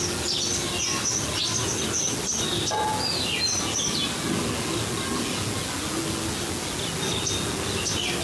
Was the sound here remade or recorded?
recorded